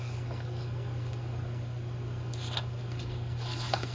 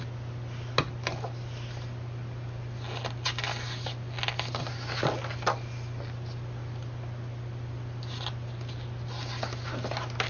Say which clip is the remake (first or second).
first